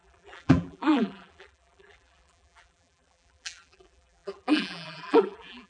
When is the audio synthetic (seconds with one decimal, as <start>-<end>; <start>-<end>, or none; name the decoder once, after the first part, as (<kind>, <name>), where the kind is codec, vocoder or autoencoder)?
0.0-5.7 (vocoder, BigVGAN v2)